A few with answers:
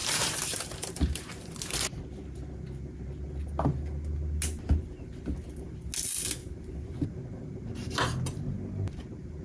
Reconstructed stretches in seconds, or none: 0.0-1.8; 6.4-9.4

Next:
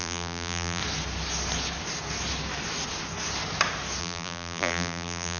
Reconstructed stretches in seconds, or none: 0.0-0.8; 4.0-5.4

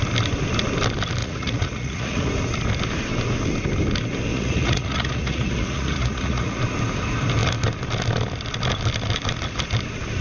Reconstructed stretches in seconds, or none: 1.2-2.3; 4.3-6.6

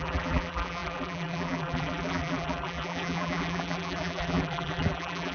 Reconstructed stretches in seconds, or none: 0.0-5.3

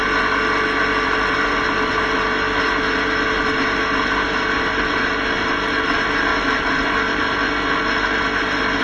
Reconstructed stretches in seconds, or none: none